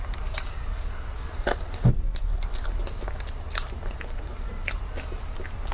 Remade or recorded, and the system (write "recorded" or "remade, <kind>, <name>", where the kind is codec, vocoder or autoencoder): recorded